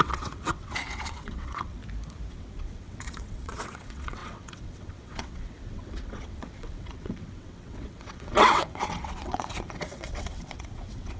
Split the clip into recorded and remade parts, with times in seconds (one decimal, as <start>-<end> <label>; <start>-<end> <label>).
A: 0.0-1.8 remade; 1.8-2.3 recorded; 2.3-11.2 remade